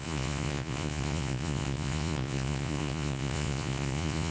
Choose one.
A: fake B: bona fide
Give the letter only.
A